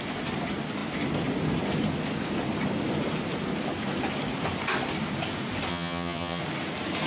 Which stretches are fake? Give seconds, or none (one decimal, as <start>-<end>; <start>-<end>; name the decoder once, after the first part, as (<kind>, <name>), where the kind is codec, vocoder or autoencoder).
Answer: 5.7-6.4 (vocoder, HiFi-GAN)